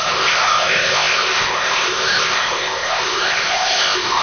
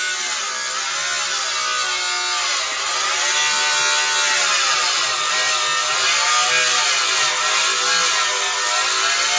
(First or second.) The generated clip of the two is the first